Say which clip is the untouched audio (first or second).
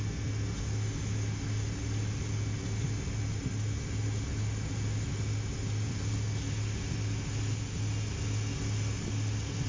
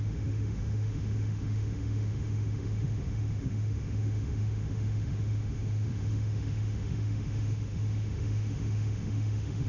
first